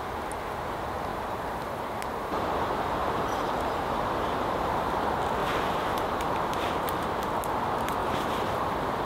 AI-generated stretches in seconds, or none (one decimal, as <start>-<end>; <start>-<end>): 1.1-4.9; 5.4-6.7; 8.0-9.0